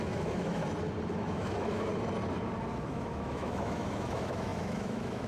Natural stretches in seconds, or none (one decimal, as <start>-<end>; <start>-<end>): 0.6-1.1; 1.9-2.8